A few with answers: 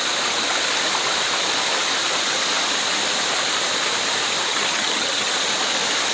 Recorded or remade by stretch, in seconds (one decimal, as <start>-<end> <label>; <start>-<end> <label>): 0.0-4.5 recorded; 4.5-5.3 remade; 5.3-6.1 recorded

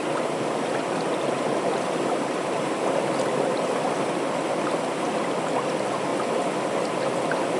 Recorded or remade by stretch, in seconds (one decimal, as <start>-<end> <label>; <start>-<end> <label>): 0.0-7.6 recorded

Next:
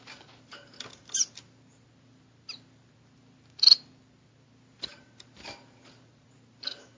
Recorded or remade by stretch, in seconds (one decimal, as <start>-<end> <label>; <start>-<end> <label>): 0.0-7.0 recorded

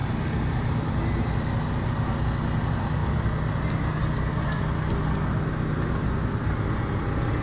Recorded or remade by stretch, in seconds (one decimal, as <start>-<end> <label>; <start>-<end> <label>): 0.0-7.4 recorded

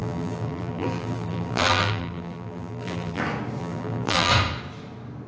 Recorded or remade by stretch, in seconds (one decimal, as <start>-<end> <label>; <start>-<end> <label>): 0.0-3.2 remade; 3.2-3.6 recorded; 3.6-4.3 remade; 4.3-5.3 recorded

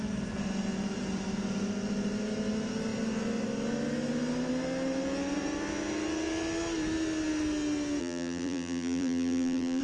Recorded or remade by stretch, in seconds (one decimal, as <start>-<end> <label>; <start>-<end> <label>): 0.0-8.0 recorded; 8.0-9.8 remade

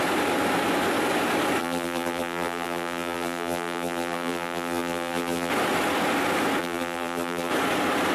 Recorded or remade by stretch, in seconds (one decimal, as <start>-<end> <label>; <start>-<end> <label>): 0.0-1.6 recorded; 1.6-5.5 remade; 5.5-6.6 recorded; 6.6-7.5 remade; 7.5-8.1 recorded

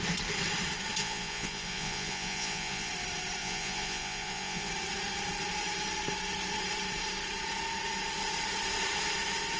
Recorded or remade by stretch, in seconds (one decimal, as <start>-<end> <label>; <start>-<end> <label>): 0.0-1.0 recorded; 1.0-2.9 remade; 2.9-3.4 recorded; 3.4-4.7 remade; 4.7-9.6 recorded